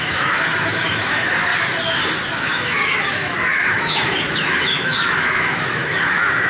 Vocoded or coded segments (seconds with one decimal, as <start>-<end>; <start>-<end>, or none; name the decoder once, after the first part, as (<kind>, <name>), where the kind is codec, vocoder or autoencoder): 0.0-1.5 (autoencoder, DAC-VAE); 2.4-6.5

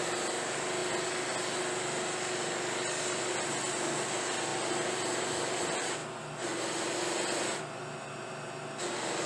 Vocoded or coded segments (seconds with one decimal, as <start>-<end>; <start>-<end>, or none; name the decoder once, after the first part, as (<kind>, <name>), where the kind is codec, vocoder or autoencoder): none